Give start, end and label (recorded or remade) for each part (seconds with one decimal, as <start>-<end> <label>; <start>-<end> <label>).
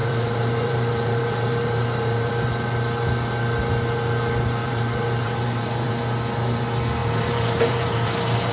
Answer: 0.0-2.3 remade; 2.3-4.6 recorded; 4.6-5.9 remade; 5.9-7.0 recorded; 7.0-8.5 remade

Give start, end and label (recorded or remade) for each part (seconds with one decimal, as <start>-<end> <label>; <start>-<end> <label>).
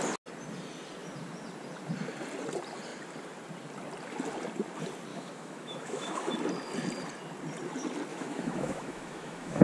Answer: 0.0-5.1 recorded; 5.1-6.3 remade; 6.3-8.1 recorded; 8.1-9.6 remade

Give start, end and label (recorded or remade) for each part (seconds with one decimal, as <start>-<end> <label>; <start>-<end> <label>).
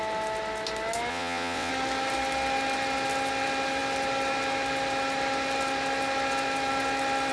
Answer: 0.0-1.1 recorded; 1.1-1.7 remade; 1.7-7.3 recorded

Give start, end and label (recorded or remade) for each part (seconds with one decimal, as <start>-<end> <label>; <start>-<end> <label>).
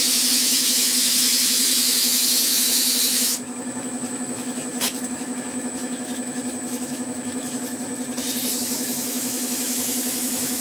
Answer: 0.0-7.9 remade; 7.9-8.6 recorded; 8.6-10.6 remade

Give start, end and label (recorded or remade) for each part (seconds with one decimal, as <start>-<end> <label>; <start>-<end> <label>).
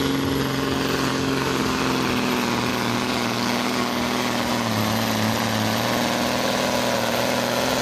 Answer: 0.0-1.1 recorded; 1.1-1.8 remade; 1.8-2.7 recorded; 2.7-4.5 remade; 4.5-7.8 recorded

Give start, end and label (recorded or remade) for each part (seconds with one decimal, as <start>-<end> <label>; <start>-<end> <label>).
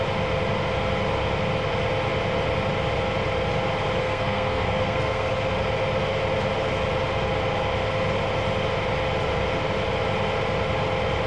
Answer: 0.0-4.0 recorded; 4.0-5.3 remade; 5.3-11.3 recorded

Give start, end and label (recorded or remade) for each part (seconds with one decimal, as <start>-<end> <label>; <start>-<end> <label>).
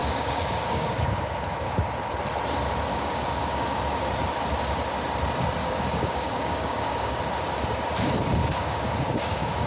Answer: 0.0-1.8 remade; 1.8-2.9 recorded; 2.9-3.8 remade; 3.8-5.6 recorded; 5.6-7.2 remade; 7.2-8.4 recorded; 8.4-9.7 remade